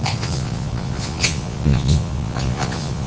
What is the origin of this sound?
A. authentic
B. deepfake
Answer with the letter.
B